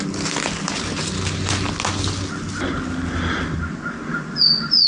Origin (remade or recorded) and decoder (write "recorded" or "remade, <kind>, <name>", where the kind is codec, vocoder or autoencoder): recorded